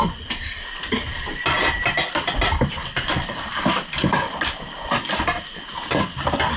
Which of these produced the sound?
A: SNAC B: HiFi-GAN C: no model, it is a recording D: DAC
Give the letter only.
C